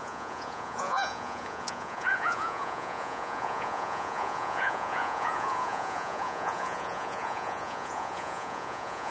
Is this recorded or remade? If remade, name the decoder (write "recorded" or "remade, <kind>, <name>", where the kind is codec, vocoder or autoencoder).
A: remade, vocoder, Vocos